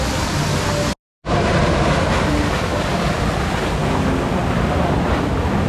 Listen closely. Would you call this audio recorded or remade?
recorded